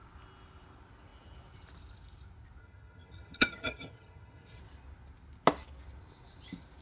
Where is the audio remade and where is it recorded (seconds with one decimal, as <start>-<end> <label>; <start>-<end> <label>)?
0.0-2.6 recorded; 2.6-4.6 remade; 4.6-6.8 recorded